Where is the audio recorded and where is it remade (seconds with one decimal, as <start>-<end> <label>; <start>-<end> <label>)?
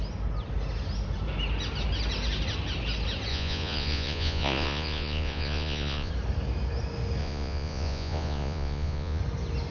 0.0-3.3 recorded; 3.3-6.1 remade; 6.1-7.2 recorded; 7.2-9.2 remade; 9.2-9.7 recorded